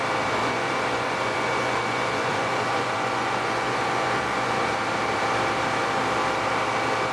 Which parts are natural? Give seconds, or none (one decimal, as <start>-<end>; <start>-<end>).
0.0-0.4; 4.7-7.1